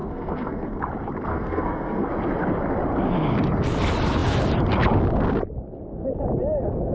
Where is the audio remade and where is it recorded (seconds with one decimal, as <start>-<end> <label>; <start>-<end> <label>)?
0.0-0.8 remade; 0.8-1.3 recorded; 1.3-2.1 remade; 2.1-6.9 recorded